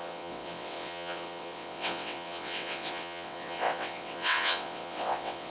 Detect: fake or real fake